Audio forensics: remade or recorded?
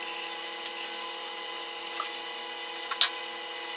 recorded